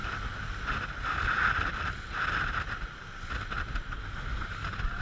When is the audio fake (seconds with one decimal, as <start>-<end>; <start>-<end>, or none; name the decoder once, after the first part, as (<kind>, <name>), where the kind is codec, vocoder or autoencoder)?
none